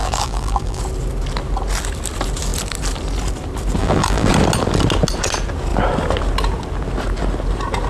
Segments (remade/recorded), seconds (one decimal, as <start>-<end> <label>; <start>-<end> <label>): 0.0-0.8 remade; 0.8-3.8 recorded; 3.8-4.3 remade; 4.3-7.9 recorded